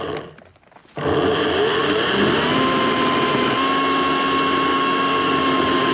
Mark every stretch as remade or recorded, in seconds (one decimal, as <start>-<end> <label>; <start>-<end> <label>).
0.0-4.7 recorded; 4.7-5.4 remade; 5.4-5.9 recorded